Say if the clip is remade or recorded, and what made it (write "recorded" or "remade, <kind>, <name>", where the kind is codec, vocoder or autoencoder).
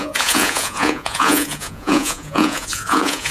remade, vocoder, Vocos